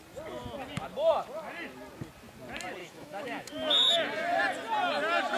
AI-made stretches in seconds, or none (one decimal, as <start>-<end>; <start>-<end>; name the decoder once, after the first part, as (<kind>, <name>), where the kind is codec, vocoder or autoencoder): 2.8-3.9 (autoencoder, DAC-VAE)